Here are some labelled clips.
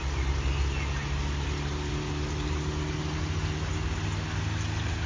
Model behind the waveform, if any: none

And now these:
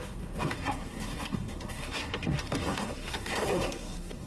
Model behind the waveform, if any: codec, SNAC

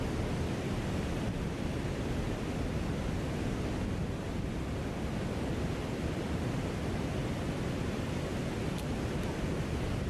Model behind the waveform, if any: none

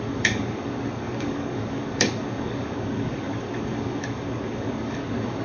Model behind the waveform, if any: codec, DAC